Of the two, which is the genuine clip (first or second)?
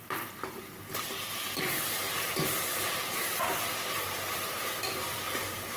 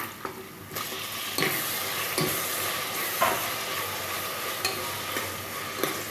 second